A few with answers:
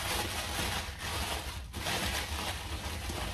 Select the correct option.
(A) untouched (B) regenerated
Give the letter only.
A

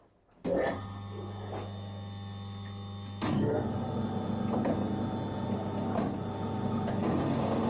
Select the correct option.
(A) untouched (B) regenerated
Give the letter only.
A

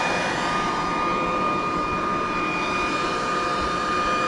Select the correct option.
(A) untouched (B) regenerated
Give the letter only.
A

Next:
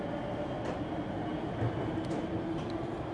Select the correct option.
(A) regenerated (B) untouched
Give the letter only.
B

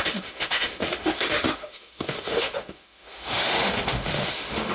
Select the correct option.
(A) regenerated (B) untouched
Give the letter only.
A